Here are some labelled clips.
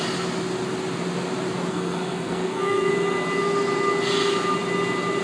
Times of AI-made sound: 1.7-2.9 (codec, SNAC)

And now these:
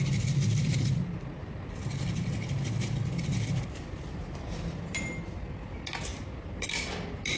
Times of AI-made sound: none

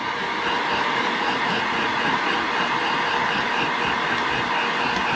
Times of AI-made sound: 0.9-2.3 (vocoder, Vocos)

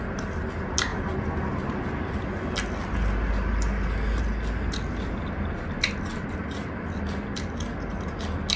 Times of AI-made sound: none

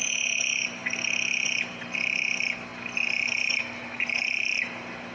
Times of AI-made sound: none